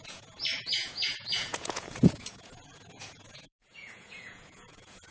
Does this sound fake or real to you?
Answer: fake